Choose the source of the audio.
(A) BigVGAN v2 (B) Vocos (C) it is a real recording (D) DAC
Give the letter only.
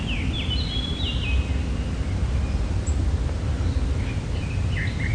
C